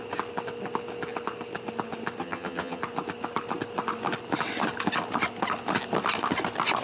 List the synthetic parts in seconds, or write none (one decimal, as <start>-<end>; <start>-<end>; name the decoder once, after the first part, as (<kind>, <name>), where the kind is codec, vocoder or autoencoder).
2.2-2.8 (vocoder, HiFi-GAN)